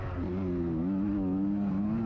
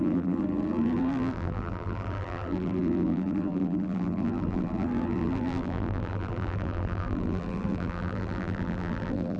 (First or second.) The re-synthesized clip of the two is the second